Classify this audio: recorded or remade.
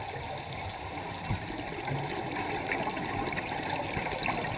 recorded